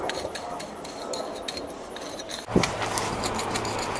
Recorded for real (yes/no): yes